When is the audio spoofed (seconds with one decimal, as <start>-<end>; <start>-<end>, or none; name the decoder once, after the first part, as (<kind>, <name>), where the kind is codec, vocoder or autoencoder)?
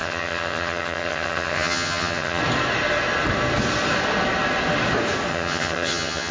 0.0-2.4 (vocoder, HiFi-GAN); 5.3-6.3